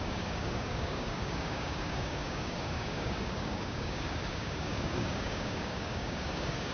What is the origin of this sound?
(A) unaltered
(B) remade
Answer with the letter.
B